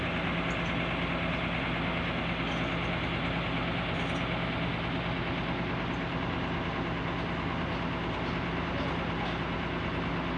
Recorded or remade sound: recorded